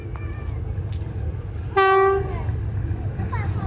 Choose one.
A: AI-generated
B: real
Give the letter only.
B